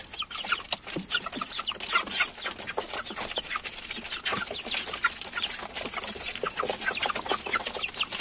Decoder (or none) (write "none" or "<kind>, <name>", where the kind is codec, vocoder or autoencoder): none